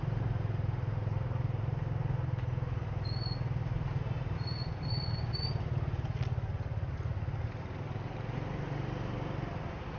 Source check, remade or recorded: recorded